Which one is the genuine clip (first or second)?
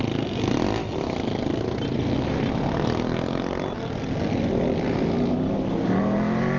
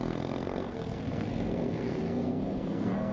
first